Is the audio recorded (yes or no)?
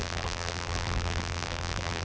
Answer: no